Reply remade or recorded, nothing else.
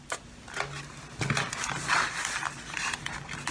recorded